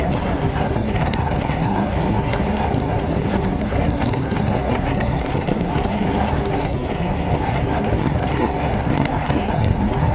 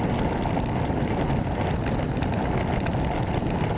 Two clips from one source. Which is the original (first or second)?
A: second